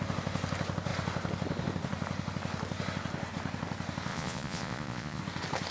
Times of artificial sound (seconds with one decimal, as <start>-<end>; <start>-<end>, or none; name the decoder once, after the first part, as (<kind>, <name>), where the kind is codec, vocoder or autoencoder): 4.1-5.2 (vocoder, Vocos)